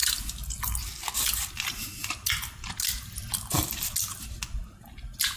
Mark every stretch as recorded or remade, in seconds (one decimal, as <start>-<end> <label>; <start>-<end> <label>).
0.0-5.4 recorded